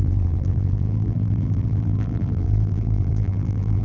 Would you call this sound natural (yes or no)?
no